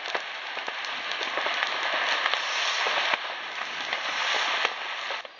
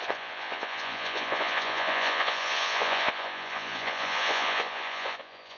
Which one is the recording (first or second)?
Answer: first